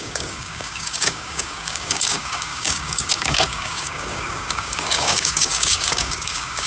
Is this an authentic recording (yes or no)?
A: no